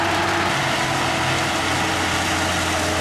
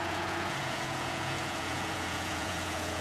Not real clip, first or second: second